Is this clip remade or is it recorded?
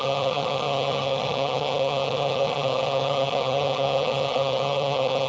remade